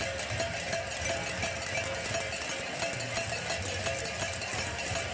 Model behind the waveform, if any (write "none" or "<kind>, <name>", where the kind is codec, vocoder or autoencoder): none